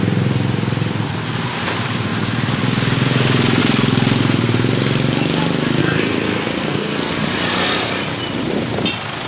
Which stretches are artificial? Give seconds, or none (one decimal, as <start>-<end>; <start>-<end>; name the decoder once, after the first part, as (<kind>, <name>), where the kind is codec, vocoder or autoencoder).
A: 5.8-7.1 (codec, SNAC)

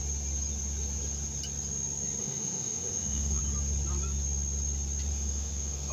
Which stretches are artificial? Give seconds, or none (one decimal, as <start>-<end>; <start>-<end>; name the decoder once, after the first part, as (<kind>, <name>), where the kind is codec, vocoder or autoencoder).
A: 2.2-3.4 (autoencoder, DAC-VAE); 5.1-5.9

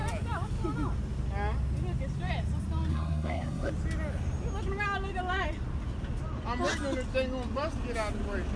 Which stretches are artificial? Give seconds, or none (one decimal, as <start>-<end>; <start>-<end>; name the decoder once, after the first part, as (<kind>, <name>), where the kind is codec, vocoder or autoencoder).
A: 2.9-3.7 (codec, SNAC)

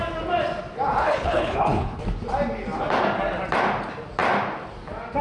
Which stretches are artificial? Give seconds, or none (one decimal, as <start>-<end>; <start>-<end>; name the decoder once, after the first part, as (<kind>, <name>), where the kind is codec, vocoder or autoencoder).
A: 1.0-2.0 (codec, HILCodec)